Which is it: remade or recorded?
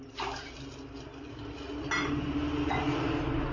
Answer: recorded